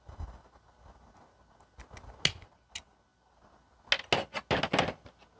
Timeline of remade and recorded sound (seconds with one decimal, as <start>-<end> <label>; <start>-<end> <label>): 0.0-5.4 recorded